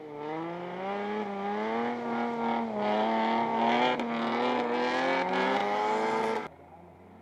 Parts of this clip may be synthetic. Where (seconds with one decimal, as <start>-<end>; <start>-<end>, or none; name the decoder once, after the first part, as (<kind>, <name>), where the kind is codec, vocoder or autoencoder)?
5.6-6.5 (vocoder, BigVGAN v2)